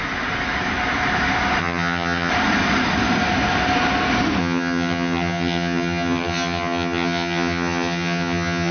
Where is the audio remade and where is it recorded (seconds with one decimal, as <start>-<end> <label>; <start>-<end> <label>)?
0.0-1.6 recorded; 1.6-2.3 remade; 2.3-4.4 recorded; 4.4-8.7 remade